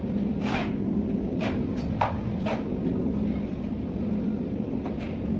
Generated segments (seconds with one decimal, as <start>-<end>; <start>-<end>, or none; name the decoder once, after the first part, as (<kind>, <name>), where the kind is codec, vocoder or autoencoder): 1.3-2.1 (vocoder, BigVGAN v2); 3.5-4.9